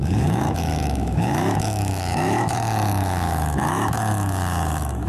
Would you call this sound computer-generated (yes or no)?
yes